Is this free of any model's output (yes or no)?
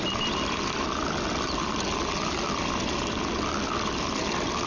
yes